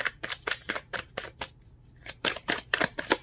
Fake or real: fake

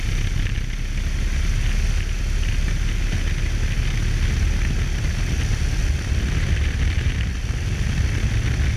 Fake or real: real